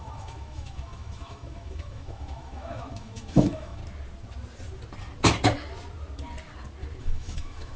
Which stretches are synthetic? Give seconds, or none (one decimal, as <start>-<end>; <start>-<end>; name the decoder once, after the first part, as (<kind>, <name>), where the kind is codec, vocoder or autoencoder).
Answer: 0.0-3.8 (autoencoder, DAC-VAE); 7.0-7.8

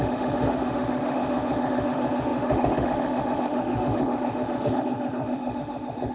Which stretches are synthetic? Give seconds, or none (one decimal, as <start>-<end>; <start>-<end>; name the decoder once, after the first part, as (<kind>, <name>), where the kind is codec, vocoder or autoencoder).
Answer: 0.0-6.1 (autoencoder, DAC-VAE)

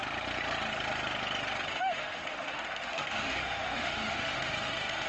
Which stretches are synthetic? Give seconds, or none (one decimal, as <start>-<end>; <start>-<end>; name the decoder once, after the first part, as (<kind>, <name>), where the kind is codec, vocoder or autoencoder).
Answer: 1.7-5.1 (autoencoder, DAC-VAE)

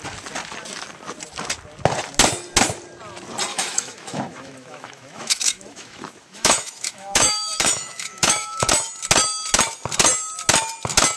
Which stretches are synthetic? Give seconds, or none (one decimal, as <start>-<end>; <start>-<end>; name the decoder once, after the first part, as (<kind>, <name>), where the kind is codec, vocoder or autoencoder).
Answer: 3.5-8.7 (autoencoder, DAC-VAE)

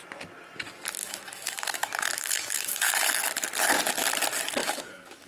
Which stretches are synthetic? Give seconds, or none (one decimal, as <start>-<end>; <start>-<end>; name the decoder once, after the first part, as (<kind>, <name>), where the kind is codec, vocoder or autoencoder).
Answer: 1.0-2.9 (autoencoder, DAC-VAE); 4.6-5.3